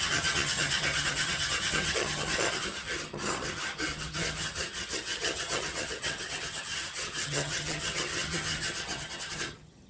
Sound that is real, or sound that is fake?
fake